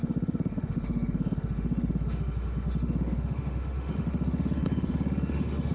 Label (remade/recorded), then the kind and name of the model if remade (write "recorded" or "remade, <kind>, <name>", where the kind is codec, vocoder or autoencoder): remade, autoencoder, DAC-VAE